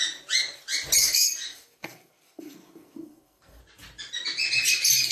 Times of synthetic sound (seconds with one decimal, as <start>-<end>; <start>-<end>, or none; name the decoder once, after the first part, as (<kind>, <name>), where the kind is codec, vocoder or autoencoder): 1.0-3.6 (codec, SNAC)